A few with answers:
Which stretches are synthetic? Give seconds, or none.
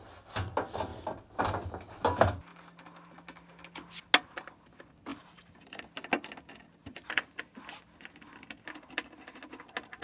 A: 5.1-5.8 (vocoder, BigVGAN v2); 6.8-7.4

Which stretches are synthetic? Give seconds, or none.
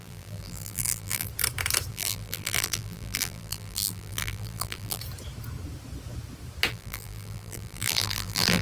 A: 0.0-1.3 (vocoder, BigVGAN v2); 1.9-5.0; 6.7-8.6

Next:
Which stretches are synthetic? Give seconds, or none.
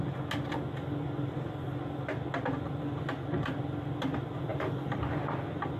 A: none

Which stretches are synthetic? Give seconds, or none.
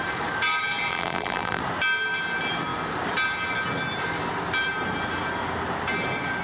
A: 0.9-1.6 (vocoder, BigVGAN v2)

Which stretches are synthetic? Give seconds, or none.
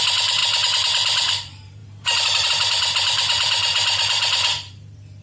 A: 0.0-5.2 (vocoder, BigVGAN v2)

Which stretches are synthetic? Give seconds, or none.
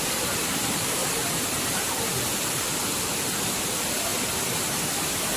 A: 0.0-1.0 (vocoder, BigVGAN v2); 2.4-5.4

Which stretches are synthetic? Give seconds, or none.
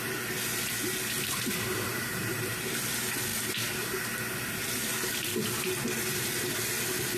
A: 1.9-2.6 (vocoder, BigVGAN v2)